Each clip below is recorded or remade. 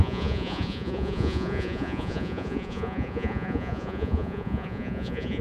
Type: remade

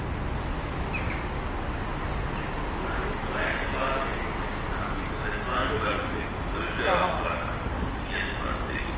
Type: recorded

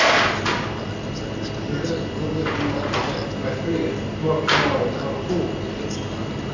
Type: recorded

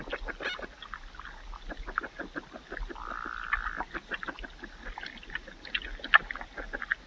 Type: recorded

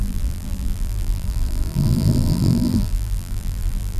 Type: remade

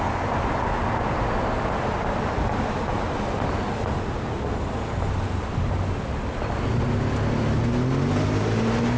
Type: recorded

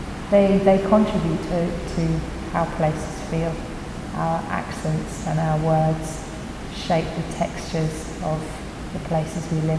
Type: recorded